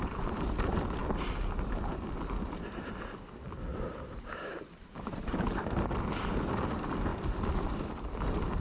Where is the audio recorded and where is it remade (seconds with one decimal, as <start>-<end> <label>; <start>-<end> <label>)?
0.0-3.7 recorded; 3.7-5.4 remade; 5.4-8.6 recorded